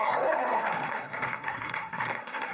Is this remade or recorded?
remade